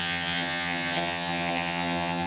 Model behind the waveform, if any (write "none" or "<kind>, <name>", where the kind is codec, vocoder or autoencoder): vocoder, HiFi-GAN